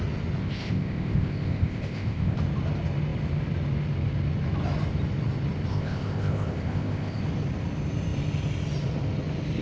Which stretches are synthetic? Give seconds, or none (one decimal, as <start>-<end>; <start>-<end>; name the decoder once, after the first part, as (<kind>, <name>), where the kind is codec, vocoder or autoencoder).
0.4-2.4 (codec, ZipCodec); 5.7-7.2